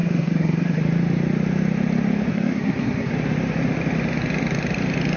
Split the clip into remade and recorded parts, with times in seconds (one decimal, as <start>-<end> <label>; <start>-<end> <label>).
0.0-0.8 remade; 0.8-2.3 recorded; 2.3-3.1 remade; 3.1-5.2 recorded